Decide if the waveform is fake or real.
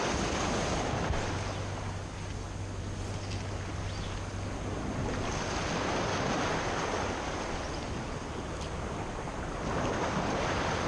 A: real